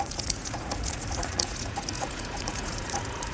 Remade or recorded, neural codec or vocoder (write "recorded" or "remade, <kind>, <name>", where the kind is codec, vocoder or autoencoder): remade, vocoder, Vocos